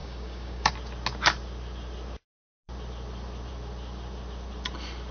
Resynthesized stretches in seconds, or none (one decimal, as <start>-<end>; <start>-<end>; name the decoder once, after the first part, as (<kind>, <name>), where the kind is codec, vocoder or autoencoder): 0.0-0.7 (codec, DAC)